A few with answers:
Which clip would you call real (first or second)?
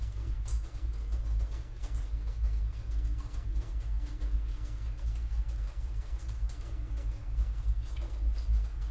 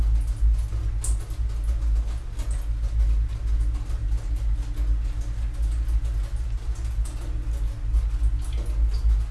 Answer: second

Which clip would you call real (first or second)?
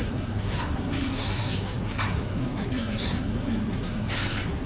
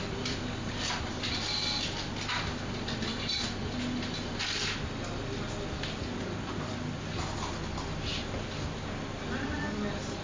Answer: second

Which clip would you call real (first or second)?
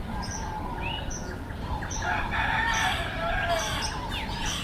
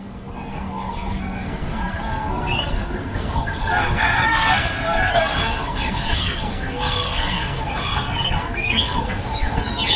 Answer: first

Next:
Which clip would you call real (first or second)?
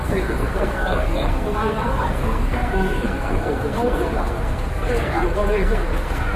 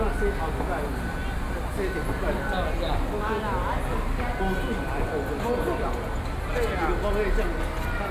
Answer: second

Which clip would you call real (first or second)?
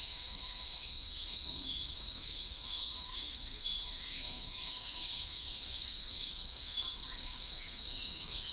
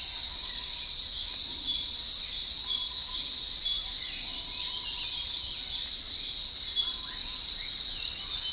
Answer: second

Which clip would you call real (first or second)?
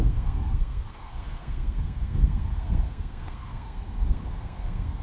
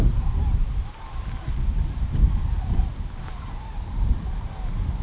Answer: second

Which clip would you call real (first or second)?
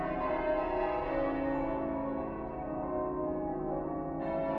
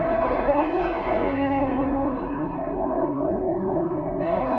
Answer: first